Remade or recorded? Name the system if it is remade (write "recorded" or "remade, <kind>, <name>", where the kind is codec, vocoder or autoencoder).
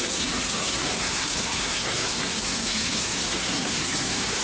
remade, codec, SNAC